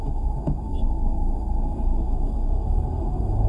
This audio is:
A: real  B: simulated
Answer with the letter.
B